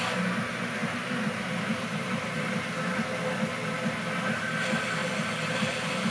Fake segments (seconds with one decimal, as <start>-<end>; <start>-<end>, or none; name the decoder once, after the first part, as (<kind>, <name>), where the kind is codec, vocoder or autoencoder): 0.8-2.5 (vocoder, BigVGAN v2); 5.0-6.1